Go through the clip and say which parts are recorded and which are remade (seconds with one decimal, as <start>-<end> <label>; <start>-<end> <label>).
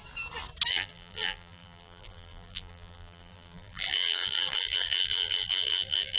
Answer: 0.0-0.7 recorded; 0.7-6.2 remade